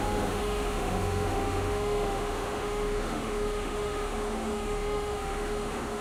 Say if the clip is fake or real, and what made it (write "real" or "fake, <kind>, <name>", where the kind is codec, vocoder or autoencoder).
fake, autoencoder, DAC-VAE